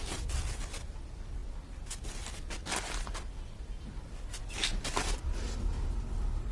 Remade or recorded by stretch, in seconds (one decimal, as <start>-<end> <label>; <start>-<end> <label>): 0.0-6.5 recorded